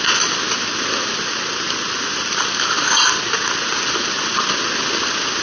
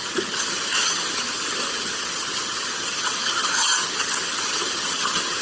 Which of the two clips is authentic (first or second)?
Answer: first